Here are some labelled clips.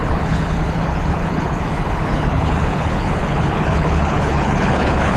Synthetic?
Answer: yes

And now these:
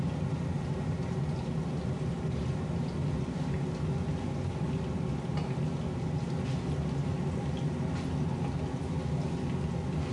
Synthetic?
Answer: no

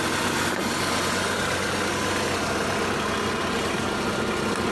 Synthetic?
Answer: no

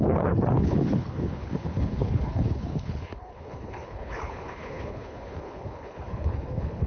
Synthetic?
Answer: yes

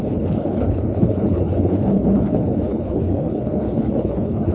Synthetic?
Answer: yes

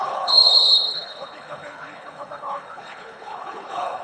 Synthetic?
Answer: yes